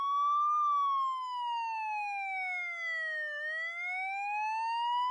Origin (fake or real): real